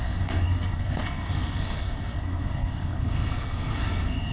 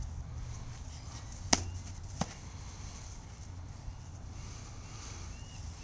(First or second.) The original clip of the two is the second